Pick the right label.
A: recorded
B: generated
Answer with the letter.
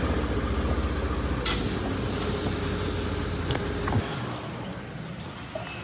A